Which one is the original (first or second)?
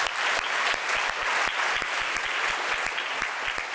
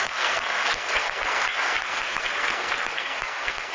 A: first